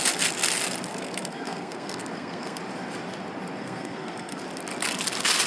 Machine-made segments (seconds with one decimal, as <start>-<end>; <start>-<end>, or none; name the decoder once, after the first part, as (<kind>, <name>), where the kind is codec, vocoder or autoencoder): 0.9-2.6 (codec, SNAC); 3.6-4.4